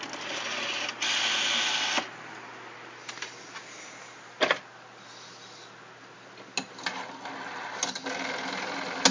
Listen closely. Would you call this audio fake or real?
real